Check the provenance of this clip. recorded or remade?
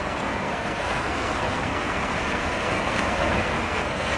remade